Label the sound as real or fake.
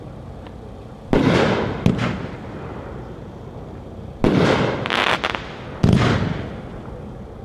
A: real